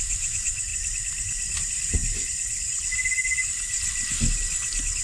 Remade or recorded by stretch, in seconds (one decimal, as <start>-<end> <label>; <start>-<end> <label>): 0.0-0.7 remade; 0.7-1.6 recorded; 1.6-2.0 remade; 2.0-5.0 recorded